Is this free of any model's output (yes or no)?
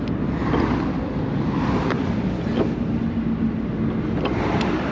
yes